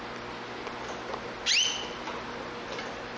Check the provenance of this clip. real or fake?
real